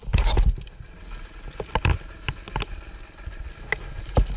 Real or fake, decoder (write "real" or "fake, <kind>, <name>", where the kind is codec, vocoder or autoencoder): real